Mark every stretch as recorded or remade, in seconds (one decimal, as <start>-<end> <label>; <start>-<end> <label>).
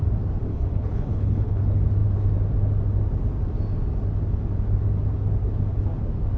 0.0-0.5 recorded; 0.5-1.6 remade; 1.6-6.4 recorded